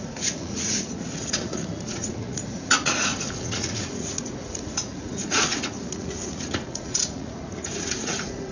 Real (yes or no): no